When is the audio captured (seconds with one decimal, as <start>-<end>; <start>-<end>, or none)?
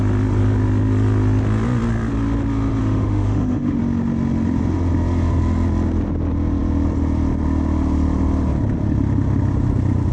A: 0.0-2.8; 3.8-10.1